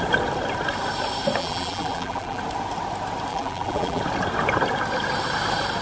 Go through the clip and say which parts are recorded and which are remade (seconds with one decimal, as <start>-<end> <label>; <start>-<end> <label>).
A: 0.0-1.4 recorded; 1.4-2.4 remade; 2.4-3.3 recorded; 3.3-4.0 remade; 4.0-5.8 recorded